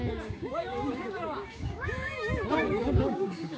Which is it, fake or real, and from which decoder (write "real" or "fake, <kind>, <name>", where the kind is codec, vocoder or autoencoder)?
fake, codec, DAC